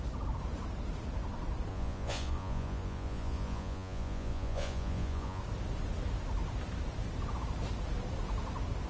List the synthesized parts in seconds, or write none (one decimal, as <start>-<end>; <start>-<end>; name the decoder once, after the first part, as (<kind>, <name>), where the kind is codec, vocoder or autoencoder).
1.7-5.4 (vocoder, Vocos)